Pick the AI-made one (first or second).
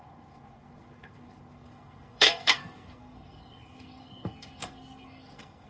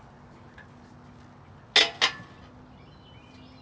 first